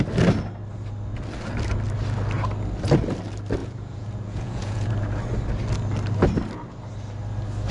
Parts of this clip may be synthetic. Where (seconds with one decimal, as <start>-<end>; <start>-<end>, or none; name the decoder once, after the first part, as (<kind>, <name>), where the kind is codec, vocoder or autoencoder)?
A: 3.6-4.9 (vocoder, Vocos)